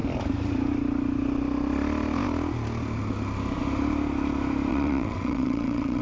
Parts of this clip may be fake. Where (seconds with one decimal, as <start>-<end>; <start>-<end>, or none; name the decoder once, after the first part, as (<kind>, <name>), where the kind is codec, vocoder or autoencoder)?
4.7-6.0 (vocoder, WaveNeXt)